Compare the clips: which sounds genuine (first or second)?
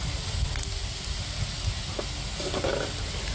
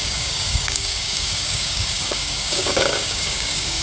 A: first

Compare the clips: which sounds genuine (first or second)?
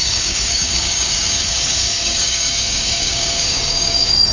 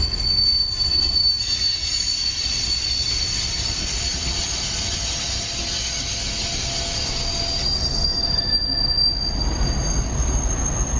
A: second